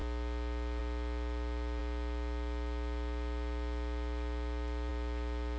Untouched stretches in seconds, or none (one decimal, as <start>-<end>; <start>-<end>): 0.0-5.6